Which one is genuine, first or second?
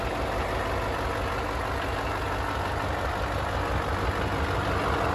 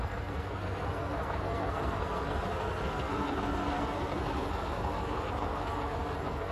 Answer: first